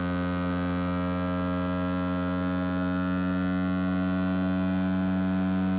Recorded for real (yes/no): yes